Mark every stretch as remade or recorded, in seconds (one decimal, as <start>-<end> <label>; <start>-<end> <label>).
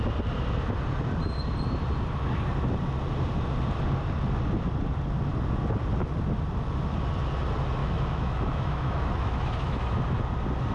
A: 0.0-7.8 recorded; 7.8-10.0 remade; 10.0-10.7 recorded